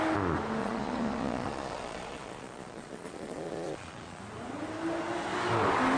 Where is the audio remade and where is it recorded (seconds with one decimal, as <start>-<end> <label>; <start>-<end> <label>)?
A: 0.0-0.6 recorded; 0.6-4.2 remade; 4.2-6.0 recorded